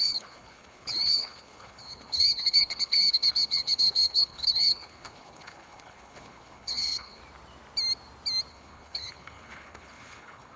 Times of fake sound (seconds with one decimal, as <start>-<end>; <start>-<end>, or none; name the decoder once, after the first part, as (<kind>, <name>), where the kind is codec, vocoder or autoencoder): 0.0-7.2 (codec, HILCodec); 8.5-10.6